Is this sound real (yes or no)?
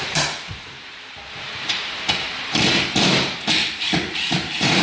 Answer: no